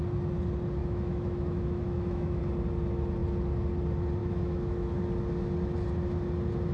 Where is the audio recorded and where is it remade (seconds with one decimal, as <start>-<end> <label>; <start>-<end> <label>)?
0.0-0.8 recorded; 0.8-2.4 remade; 2.4-4.2 recorded; 4.2-4.9 remade; 4.9-6.7 recorded